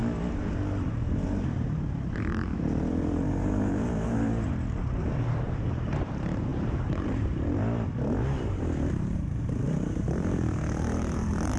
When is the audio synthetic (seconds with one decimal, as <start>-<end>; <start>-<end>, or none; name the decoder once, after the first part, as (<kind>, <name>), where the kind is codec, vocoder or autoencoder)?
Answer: 0.9-11.6 (vocoder, BigVGAN v2)